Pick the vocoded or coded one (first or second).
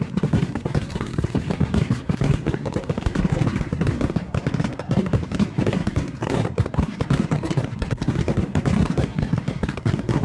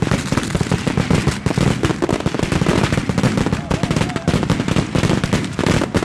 first